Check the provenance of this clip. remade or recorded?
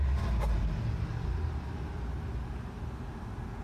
recorded